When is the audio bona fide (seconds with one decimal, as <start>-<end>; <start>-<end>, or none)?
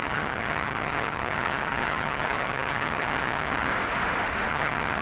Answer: 3.7-4.5